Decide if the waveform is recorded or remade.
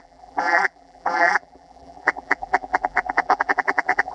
remade